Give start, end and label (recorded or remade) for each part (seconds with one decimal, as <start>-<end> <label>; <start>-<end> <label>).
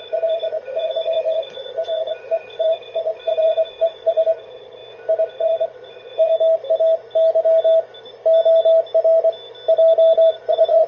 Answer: 0.0-4.8 remade; 4.8-5.3 recorded; 5.3-6.3 remade; 6.3-10.3 recorded; 10.3-10.9 remade